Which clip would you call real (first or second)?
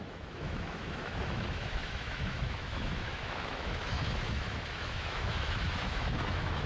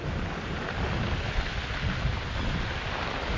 second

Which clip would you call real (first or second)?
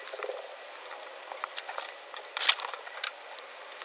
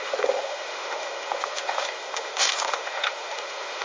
first